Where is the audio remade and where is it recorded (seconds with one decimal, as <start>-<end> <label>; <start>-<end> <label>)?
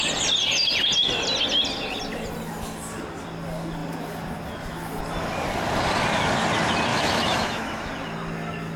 0.0-6.9 recorded; 6.9-7.9 remade; 7.9-8.8 recorded